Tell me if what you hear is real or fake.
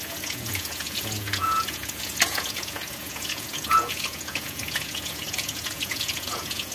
fake